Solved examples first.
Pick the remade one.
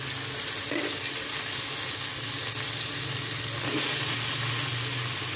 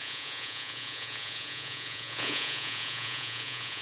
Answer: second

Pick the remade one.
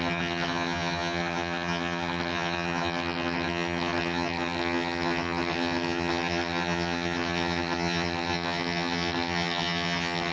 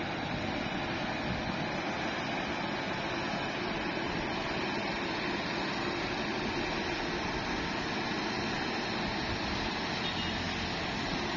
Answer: first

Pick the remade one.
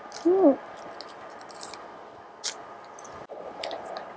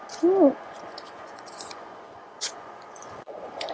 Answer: second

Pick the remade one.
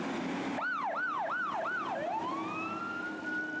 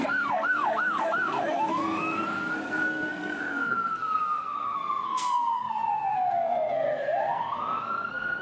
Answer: second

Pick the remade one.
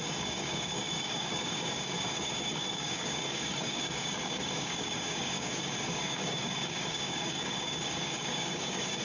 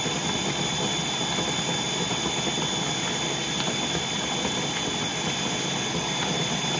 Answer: first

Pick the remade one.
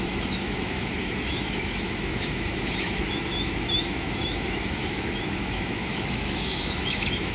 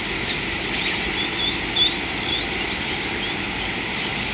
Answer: first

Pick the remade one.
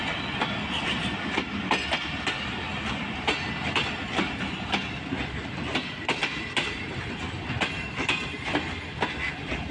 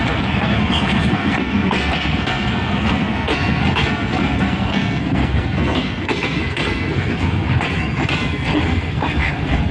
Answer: second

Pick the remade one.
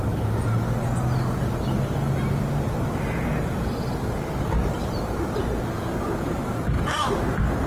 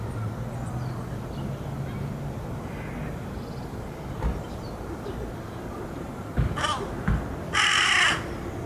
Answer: second